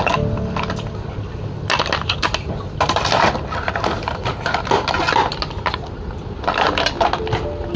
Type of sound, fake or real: real